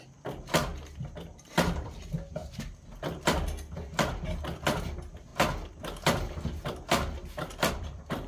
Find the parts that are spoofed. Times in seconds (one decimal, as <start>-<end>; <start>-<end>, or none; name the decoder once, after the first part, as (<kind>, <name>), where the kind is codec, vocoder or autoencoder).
0.0-0.7 (vocoder, BigVGAN v2); 1.5-2.4; 4.8-5.3; 7.7-8.3